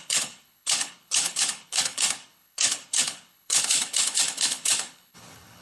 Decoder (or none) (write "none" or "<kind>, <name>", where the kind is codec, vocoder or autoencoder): codec, HILCodec